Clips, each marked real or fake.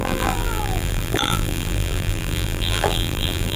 fake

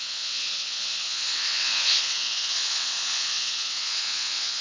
fake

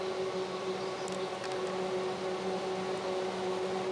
real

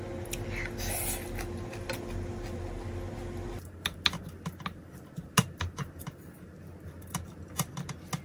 real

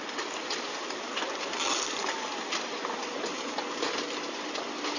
real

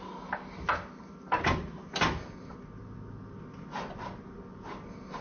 real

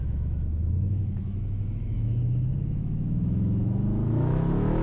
fake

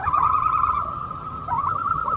fake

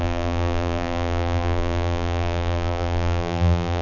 fake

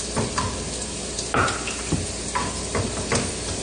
real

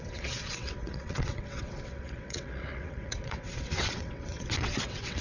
fake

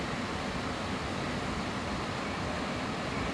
real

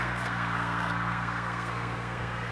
fake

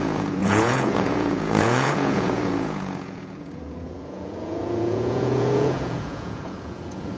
fake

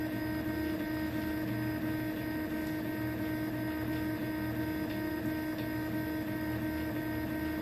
fake